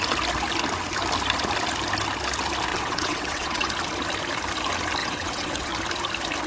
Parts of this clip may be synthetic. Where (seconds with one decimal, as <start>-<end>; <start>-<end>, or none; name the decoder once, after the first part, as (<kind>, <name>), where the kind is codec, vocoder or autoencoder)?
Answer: 2.7-3.7 (vocoder, WaveNeXt); 5.0-5.7